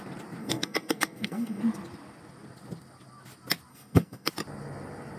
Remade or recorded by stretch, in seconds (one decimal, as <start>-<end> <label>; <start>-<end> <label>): 0.0-0.4 recorded; 0.4-1.6 remade; 1.6-3.7 recorded; 3.7-4.3 remade; 4.3-5.2 recorded